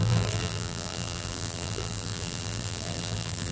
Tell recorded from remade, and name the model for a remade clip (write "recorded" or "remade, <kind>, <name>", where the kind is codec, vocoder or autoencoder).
remade, vocoder, BigVGAN v2